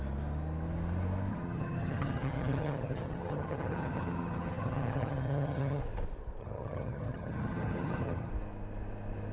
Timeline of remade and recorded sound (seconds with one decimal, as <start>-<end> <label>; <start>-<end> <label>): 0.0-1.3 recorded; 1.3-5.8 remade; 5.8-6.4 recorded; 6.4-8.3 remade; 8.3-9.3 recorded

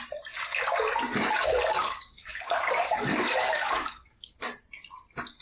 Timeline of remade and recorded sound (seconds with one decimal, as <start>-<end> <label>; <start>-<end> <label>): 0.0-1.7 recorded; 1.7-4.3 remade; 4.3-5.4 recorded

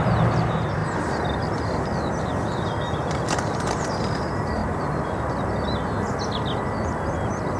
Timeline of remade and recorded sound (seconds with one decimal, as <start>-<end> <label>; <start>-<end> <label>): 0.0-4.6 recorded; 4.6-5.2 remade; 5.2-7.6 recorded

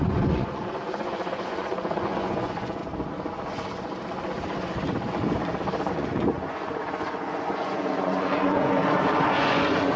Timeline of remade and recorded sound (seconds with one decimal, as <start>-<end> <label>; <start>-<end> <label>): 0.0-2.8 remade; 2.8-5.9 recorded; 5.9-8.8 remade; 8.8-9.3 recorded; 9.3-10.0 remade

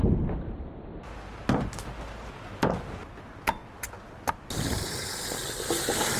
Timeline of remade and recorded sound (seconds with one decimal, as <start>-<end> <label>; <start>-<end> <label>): 0.0-6.2 recorded